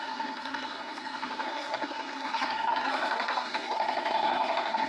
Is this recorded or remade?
remade